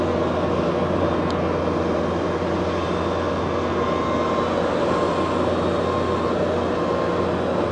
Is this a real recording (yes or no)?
yes